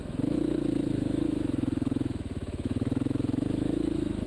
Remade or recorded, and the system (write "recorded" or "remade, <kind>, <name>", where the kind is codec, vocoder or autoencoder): remade, autoencoder, DAC-VAE